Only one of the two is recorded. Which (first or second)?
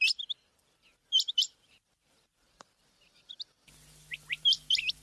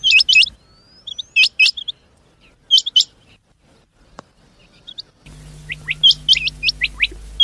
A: second